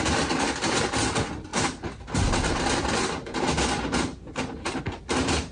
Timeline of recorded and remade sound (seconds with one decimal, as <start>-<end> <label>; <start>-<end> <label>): 0.0-5.5 recorded